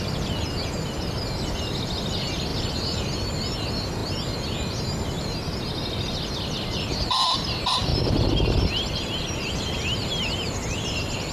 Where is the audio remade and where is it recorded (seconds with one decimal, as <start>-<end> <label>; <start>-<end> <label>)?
0.0-11.3 recorded